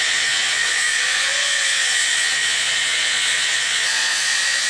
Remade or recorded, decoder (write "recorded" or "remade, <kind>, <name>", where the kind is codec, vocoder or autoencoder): remade, vocoder, Vocos